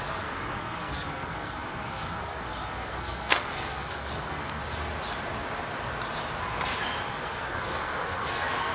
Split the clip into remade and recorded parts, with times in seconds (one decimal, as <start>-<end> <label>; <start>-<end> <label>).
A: 0.0-4.6 remade; 4.6-7.1 recorded; 7.1-8.7 remade